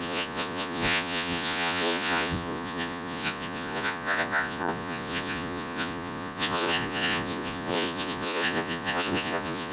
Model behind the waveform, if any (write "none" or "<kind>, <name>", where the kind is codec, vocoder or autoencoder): vocoder, Vocos